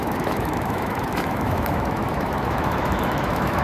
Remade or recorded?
remade